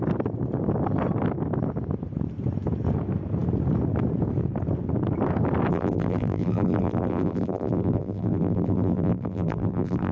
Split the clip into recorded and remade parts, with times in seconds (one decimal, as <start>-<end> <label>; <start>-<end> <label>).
0.0-5.7 recorded; 5.7-10.1 remade